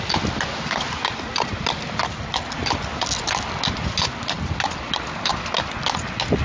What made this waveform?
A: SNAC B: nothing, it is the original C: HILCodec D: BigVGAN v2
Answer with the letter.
B